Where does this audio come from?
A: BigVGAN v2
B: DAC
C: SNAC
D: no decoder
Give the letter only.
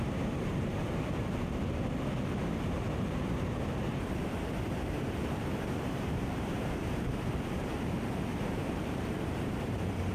A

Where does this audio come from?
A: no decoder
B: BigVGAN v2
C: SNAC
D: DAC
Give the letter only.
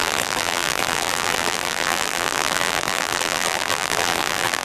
B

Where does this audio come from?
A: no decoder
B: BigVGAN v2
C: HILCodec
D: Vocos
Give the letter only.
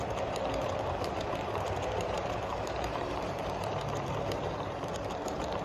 B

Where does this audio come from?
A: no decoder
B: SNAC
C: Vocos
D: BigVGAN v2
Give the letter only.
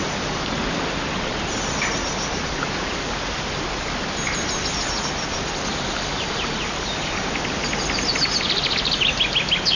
A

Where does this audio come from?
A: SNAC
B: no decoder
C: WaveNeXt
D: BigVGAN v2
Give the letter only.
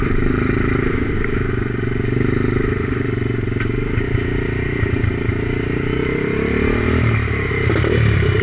D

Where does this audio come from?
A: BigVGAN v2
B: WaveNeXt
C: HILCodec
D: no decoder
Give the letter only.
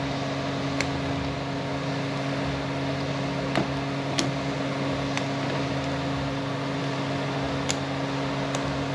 D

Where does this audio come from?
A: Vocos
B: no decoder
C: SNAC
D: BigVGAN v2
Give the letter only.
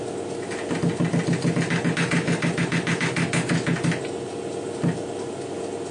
B